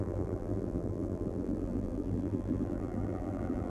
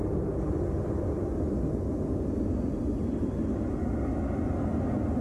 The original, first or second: second